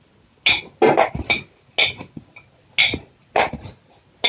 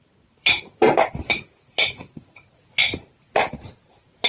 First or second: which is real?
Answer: first